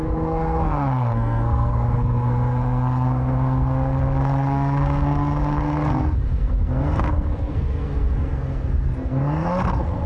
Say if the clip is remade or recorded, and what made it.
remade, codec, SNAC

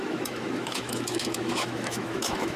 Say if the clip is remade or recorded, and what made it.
remade, autoencoder, DAC-VAE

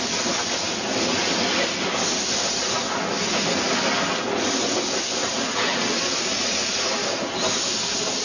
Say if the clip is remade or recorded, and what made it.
recorded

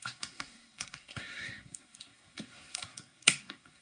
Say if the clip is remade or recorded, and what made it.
remade, codec, SNAC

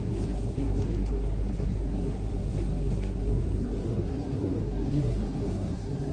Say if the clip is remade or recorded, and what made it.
remade, codec, SNAC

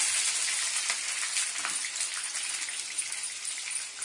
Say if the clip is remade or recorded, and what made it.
recorded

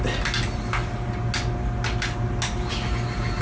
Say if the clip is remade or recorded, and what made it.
recorded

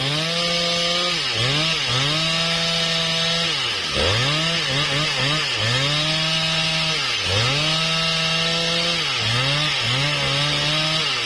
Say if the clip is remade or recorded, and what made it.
recorded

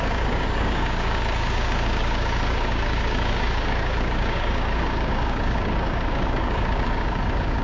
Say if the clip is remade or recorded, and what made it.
remade, codec, DAC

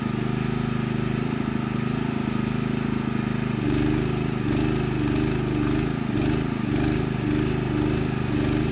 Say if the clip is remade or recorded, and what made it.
recorded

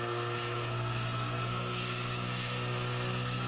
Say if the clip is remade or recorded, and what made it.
remade, codec, SNAC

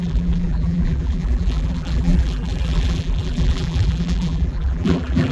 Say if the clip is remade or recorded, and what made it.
remade, vocoder, BigVGAN v2